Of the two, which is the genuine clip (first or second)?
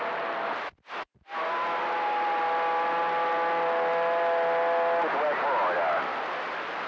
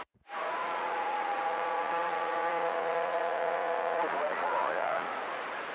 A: first